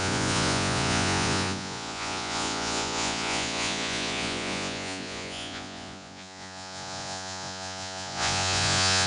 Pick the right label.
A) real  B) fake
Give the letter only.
B